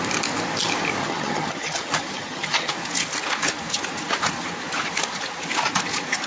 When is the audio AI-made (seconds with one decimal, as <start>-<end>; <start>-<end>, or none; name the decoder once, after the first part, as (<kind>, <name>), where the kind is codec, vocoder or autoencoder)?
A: 1.0-2.7 (vocoder, HiFi-GAN)